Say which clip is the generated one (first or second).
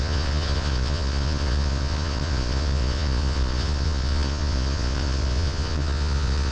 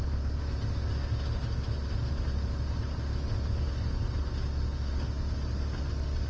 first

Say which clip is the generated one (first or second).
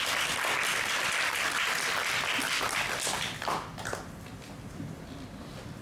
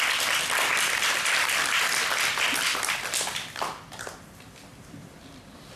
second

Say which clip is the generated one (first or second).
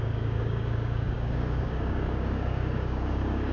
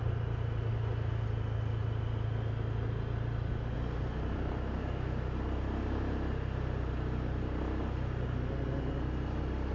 first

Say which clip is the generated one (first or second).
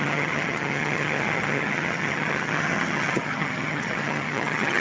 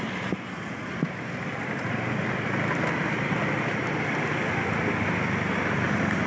first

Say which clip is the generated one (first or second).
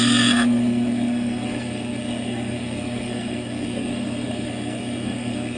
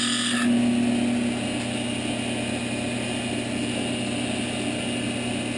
first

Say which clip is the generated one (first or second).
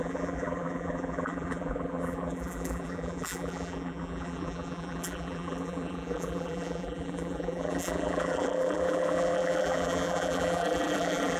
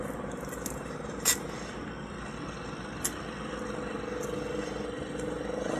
first